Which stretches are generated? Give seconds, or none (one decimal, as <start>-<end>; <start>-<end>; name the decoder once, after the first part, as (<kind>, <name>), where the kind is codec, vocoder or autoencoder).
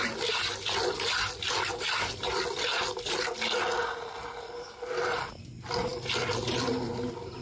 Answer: none